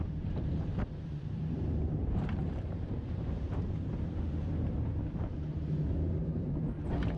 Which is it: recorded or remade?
remade